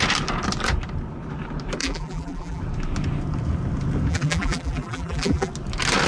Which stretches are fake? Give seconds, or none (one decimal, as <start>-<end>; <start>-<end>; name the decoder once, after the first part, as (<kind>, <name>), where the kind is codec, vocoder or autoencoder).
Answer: 1.8-2.6 (vocoder, BigVGAN v2); 4.1-5.5